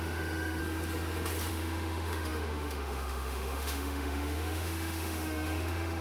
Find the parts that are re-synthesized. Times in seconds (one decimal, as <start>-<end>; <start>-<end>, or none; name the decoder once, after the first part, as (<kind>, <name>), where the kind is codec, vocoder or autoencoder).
0.0-0.6 (autoencoder, DAC-VAE); 1.5-6.0